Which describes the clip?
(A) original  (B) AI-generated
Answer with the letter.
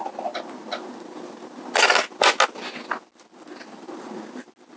A